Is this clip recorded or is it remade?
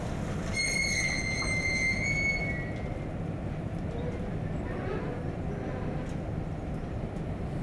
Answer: recorded